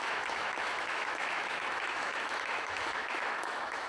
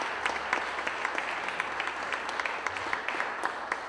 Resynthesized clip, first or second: first